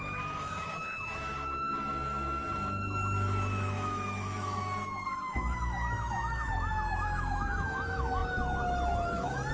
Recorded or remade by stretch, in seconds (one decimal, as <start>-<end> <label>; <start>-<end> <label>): 0.0-9.5 remade